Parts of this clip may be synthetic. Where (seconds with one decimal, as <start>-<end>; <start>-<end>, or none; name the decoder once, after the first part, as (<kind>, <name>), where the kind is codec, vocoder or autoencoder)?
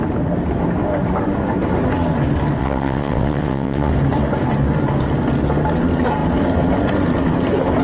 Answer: 2.6-3.9 (vocoder, WaveNeXt)